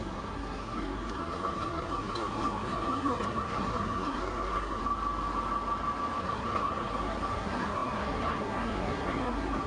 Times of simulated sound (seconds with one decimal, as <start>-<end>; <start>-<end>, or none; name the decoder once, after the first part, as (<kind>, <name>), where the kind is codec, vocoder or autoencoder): 0.0-4.8 (codec, SNAC); 6.2-9.7